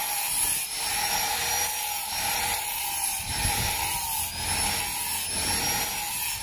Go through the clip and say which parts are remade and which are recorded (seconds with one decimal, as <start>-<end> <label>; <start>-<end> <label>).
0.0-3.8 remade; 3.8-6.4 recorded